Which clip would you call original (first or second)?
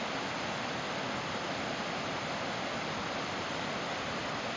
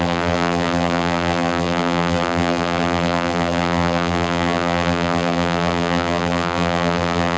first